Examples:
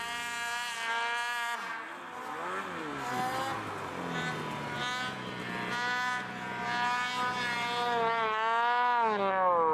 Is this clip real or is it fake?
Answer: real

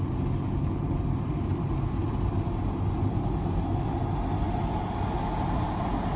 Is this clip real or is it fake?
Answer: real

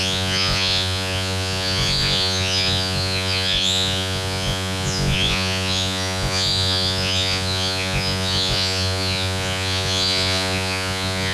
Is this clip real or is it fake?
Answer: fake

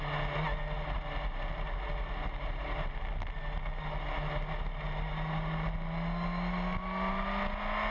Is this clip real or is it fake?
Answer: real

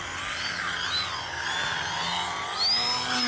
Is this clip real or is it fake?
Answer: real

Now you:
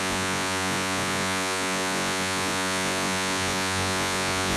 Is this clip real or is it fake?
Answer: fake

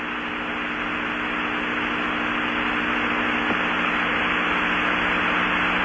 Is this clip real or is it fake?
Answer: real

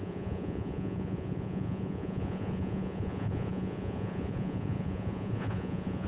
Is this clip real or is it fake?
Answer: fake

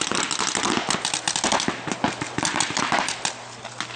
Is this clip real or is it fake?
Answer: real